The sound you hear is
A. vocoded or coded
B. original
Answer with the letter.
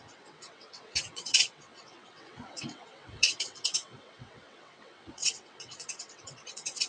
A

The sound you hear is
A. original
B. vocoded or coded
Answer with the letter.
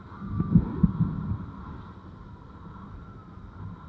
A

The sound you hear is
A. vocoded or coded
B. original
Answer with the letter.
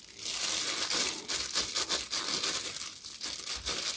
B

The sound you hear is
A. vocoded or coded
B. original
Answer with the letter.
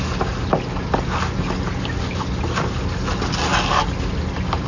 B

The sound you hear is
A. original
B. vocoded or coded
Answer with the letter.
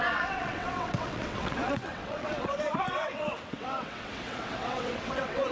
B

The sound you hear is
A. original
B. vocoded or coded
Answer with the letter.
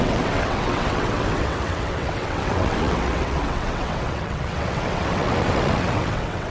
B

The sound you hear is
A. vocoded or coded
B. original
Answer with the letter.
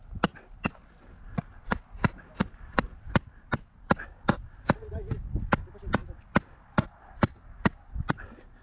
B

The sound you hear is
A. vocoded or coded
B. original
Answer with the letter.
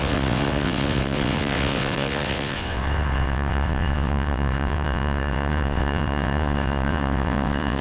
A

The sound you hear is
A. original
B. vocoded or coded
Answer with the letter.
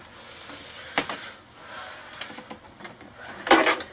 A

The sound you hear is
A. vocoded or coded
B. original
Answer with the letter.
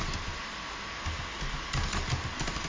B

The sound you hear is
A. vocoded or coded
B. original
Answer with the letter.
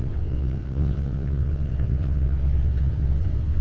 A